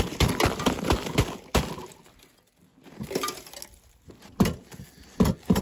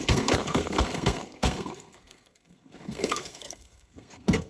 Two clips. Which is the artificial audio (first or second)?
second